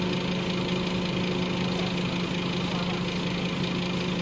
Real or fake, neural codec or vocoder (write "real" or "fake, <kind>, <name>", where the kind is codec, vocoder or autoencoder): real